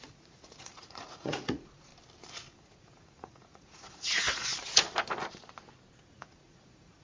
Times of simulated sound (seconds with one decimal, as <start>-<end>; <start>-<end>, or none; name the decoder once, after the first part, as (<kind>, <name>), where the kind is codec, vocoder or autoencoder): 0.0-1.9 (vocoder, Vocos); 2.6-4.5; 6.1-7.0